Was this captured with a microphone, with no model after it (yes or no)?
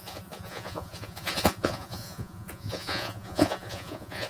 no